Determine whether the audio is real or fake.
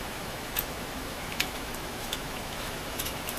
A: fake